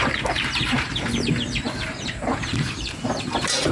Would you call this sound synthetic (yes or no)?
yes